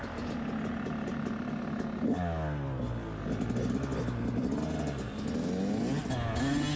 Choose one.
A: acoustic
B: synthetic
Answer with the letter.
A